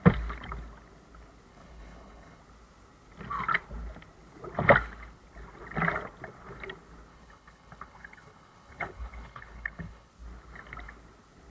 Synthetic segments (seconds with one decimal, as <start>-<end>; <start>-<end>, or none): 1.5-2.4; 7.1-10.1